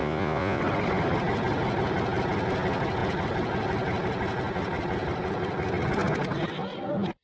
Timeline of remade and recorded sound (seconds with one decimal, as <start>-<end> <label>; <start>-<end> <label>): 0.0-0.6 remade; 0.6-7.2 recorded